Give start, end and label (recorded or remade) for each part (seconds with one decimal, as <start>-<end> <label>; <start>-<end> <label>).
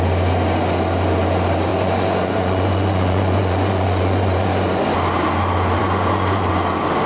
0.0-1.7 recorded; 1.7-4.8 remade; 4.8-5.8 recorded; 5.8-6.5 remade; 6.5-7.1 recorded